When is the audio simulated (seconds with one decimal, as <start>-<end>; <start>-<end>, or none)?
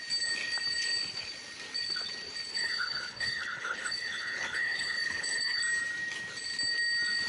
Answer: 2.5-5.6